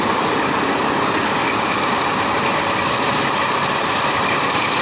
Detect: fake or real fake